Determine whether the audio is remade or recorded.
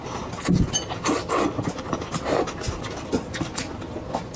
recorded